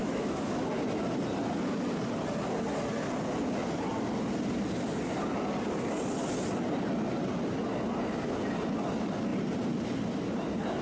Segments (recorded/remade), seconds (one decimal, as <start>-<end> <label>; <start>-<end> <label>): 0.0-0.7 remade; 0.7-10.8 recorded